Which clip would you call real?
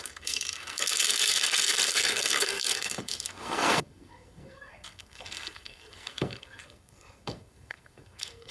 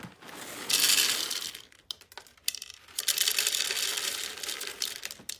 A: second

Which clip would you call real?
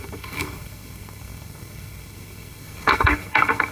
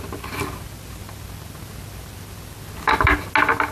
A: second